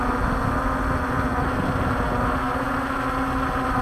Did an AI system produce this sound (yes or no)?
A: no